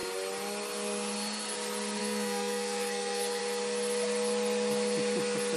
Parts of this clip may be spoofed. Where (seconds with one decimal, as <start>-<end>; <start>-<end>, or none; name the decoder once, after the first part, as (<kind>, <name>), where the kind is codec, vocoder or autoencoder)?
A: 2.0-3.4 (codec, SNAC)